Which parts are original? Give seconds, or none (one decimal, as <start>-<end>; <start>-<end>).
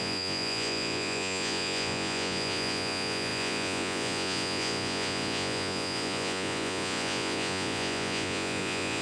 none